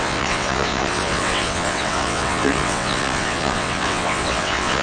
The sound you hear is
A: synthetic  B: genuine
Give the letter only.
A